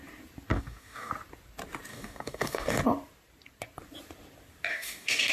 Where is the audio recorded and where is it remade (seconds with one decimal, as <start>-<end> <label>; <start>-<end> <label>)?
0.0-0.5 recorded; 0.5-1.1 remade; 1.1-1.9 recorded; 1.9-2.8 remade; 2.8-4.7 recorded; 4.7-5.3 remade